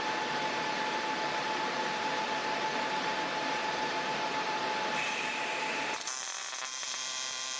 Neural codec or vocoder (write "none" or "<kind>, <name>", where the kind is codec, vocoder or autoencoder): vocoder, BigVGAN v2